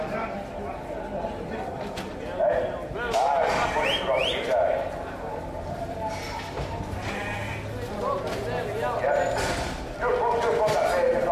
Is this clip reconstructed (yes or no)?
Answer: no